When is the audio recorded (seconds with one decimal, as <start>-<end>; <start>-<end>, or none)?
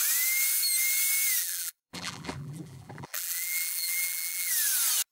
0.0-1.4; 4.5-5.1